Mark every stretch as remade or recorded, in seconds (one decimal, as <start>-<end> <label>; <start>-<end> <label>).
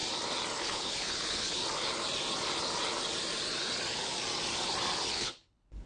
0.0-0.6 recorded; 0.6-1.6 remade; 1.6-5.1 recorded; 5.1-5.9 remade